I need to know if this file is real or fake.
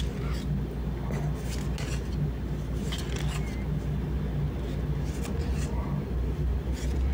real